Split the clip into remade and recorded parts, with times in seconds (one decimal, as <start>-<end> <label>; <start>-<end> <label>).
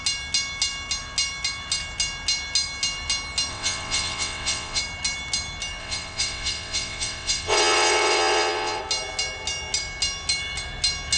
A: 0.0-3.5 recorded; 3.5-4.8 remade; 4.8-5.8 recorded; 5.8-8.8 remade; 8.8-11.2 recorded